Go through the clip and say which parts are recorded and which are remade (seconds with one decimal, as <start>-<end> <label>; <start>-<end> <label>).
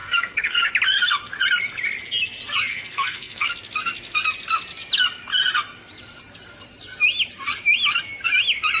0.0-0.7 remade; 0.7-2.7 recorded; 2.7-3.5 remade; 3.5-8.8 recorded